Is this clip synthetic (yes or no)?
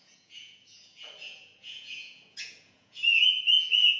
yes